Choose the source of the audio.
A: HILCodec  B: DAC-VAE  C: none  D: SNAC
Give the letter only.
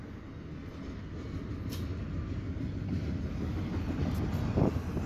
C